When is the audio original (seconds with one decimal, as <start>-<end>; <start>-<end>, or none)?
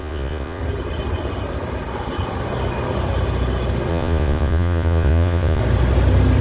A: 0.6-3.9; 5.6-6.4